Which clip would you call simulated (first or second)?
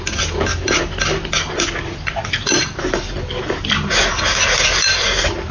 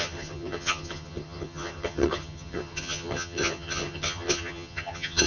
second